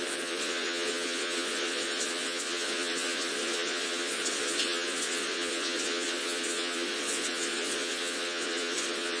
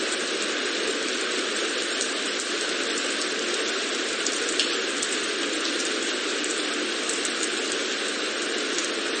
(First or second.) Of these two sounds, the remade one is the first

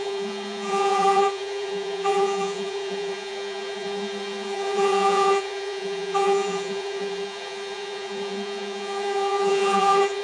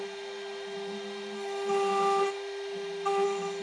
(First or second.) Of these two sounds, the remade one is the first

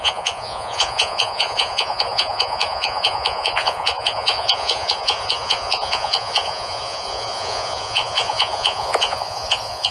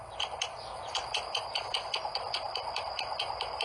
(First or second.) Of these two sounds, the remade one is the first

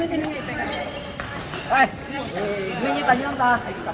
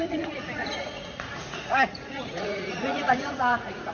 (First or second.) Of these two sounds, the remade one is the second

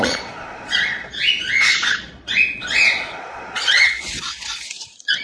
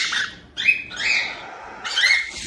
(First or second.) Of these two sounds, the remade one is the first